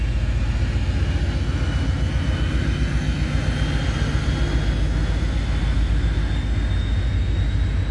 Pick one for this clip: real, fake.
real